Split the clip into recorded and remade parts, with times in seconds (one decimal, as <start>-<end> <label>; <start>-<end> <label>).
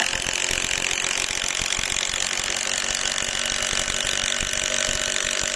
0.0-5.6 recorded